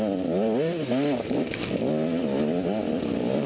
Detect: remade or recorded recorded